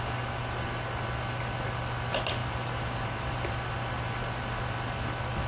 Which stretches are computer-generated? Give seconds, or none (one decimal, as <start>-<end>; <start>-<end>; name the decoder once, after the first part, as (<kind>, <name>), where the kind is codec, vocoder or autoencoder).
2.4-3.5 (vocoder, BigVGAN v2)